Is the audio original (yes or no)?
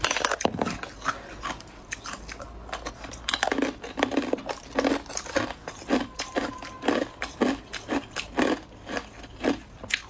yes